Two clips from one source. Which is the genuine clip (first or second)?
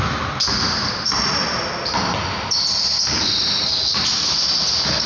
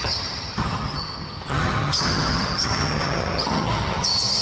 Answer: first